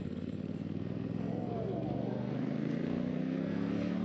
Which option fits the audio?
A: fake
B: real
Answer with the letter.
A